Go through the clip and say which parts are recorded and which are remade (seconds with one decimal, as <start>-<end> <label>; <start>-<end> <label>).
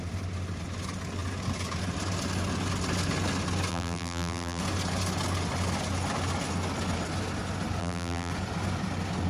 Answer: 0.0-3.7 recorded; 3.7-4.6 remade; 4.6-7.8 recorded; 7.8-8.3 remade; 8.3-9.3 recorded